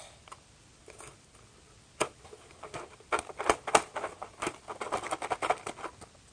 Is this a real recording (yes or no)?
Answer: yes